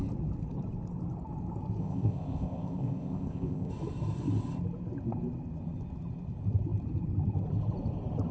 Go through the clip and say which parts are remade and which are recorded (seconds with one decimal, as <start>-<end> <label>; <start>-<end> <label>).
0.0-1.8 recorded; 1.8-3.7 remade; 3.7-8.3 recorded